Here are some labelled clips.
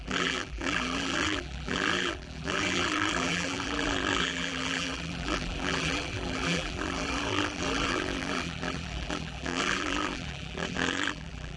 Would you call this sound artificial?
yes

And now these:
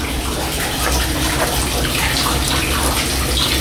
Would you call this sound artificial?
no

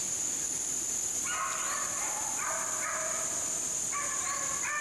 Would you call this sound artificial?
no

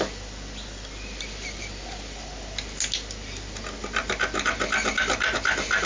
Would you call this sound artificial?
no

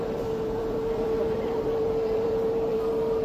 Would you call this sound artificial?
yes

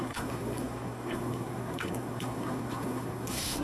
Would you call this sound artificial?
yes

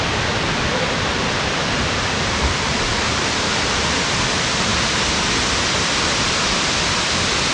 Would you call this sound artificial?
no